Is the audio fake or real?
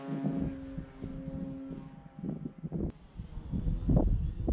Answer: real